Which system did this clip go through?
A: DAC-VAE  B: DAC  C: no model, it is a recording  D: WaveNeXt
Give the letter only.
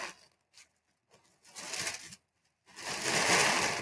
C